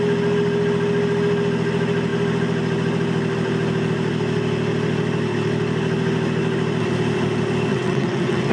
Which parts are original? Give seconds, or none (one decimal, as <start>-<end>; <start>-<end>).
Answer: 0.0-7.7